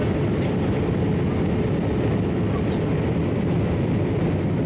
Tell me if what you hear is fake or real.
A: real